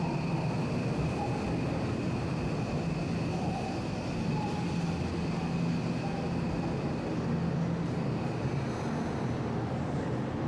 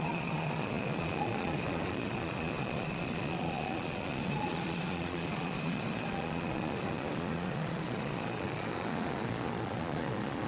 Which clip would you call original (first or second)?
first